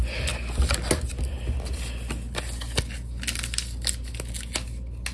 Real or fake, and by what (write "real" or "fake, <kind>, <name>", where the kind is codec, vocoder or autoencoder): real